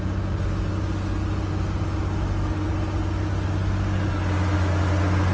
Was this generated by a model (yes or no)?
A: no